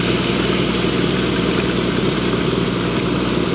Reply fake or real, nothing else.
fake